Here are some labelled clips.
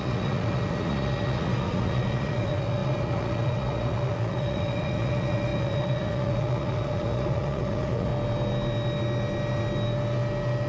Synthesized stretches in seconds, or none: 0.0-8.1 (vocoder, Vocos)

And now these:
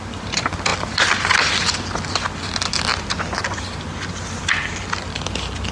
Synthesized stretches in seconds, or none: none

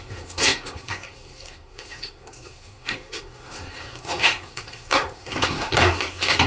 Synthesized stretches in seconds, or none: 0.0-6.5 (codec, SNAC)

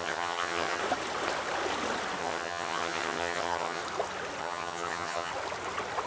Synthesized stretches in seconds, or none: 0.0-0.8 (vocoder, HiFi-GAN); 2.2-3.8; 4.4-5.3

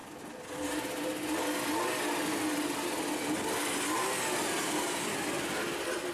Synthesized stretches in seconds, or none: none